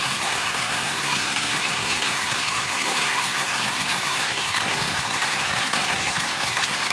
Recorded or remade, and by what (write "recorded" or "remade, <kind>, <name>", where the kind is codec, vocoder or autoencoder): remade, codec, SNAC